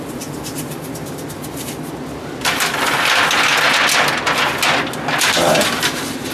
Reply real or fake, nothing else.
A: real